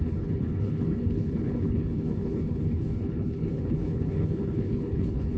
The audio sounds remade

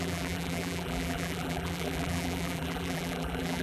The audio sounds remade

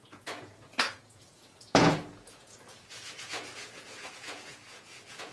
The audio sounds remade